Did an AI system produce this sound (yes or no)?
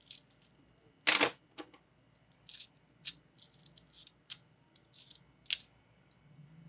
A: no